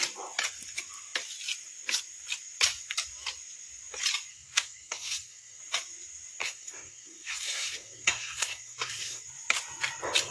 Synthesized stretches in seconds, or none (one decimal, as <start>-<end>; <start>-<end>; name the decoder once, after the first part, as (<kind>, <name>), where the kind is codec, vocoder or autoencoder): 4.3-5.6 (codec, SNAC); 6.4-9.2